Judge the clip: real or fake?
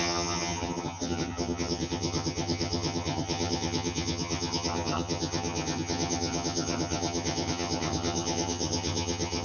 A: fake